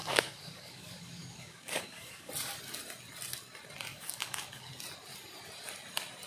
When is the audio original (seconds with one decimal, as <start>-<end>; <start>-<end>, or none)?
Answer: 2.3-3.9; 4.7-6.3

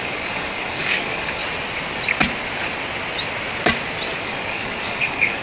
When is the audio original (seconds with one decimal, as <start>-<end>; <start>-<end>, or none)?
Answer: 1.4-4.2

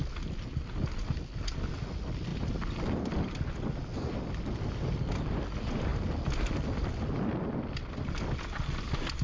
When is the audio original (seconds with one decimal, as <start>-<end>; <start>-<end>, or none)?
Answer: 0.0-9.2